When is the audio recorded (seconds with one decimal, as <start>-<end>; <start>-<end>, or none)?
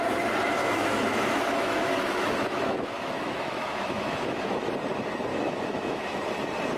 0.0-0.6; 4.7-5.3; 6.2-6.8